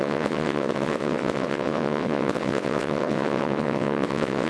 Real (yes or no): no